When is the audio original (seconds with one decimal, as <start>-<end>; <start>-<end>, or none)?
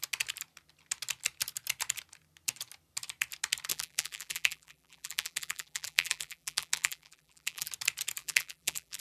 0.0-3.7; 7.7-8.2